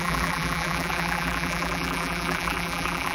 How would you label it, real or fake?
fake